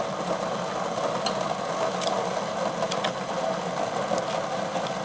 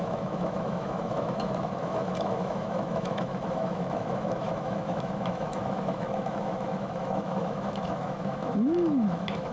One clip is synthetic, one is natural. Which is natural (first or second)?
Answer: first